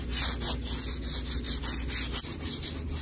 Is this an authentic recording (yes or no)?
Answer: yes